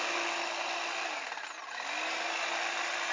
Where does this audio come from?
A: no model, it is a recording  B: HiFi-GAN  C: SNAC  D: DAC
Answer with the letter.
A